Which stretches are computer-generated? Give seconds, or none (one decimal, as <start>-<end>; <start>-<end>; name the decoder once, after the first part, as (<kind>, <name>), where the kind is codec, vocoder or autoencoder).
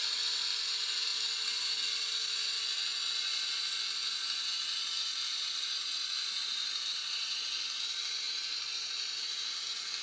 none